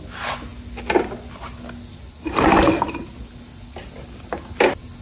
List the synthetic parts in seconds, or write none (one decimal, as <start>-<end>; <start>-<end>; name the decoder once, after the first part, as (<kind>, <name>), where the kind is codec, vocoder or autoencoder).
none

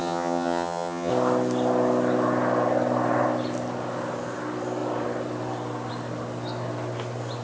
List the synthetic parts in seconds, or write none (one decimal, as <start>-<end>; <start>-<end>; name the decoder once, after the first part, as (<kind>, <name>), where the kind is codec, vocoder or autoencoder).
0.0-1.1 (vocoder, HiFi-GAN)

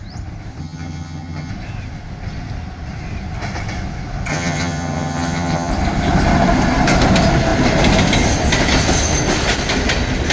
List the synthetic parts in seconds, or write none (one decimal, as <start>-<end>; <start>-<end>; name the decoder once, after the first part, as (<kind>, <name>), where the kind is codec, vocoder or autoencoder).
0.6-1.5 (vocoder, HiFi-GAN); 4.3-5.7

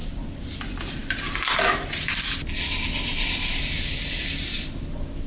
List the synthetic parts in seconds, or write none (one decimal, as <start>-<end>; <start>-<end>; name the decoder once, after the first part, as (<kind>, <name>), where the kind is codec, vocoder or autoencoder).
none

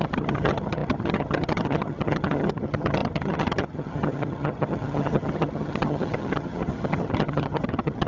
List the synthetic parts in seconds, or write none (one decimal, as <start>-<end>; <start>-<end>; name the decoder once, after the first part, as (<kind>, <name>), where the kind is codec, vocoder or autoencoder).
0.0-8.1 (vocoder, HiFi-GAN)

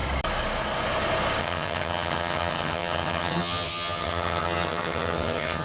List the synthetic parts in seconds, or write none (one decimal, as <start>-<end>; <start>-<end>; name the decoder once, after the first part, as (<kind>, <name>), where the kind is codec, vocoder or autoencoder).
1.4-5.6 (vocoder, HiFi-GAN)

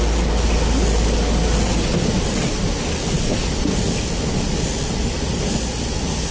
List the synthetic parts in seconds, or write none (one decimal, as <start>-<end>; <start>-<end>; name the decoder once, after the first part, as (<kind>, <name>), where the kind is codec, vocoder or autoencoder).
none